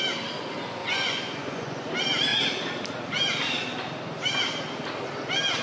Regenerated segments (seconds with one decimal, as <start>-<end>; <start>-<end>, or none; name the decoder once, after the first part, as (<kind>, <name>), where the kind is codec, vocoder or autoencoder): 0.8-1.9 (vocoder, Vocos)